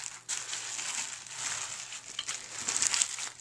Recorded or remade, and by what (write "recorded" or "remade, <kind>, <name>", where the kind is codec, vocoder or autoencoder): recorded